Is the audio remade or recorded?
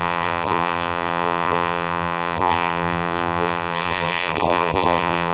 remade